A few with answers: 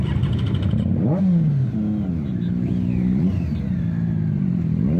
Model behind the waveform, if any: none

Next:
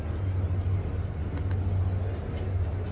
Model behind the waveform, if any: none